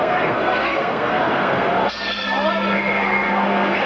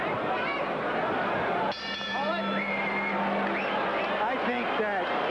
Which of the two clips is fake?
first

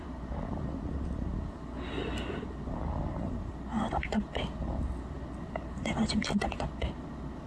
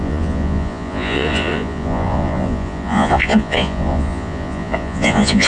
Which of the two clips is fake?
second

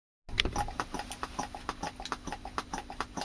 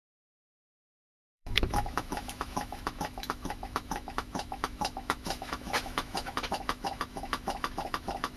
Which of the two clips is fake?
second